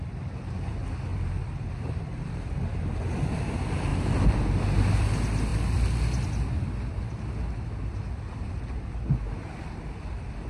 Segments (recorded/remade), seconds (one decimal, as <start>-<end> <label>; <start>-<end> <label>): 0.0-1.1 recorded; 1.1-2.6 remade; 2.6-3.9 recorded; 3.9-4.5 remade; 4.5-10.5 recorded

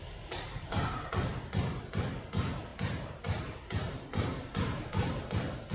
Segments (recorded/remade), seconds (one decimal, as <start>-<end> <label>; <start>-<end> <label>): 0.0-2.7 recorded; 2.7-5.7 remade